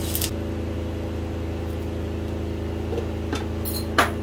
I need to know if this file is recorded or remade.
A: recorded